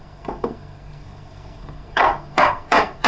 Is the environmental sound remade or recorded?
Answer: remade